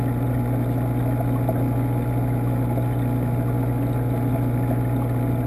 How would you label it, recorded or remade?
recorded